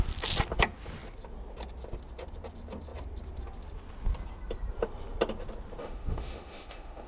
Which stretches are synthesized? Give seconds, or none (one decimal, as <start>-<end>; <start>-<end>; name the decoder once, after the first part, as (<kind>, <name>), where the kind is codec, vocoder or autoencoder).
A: 5.8-7.1 (autoencoder, DAC-VAE)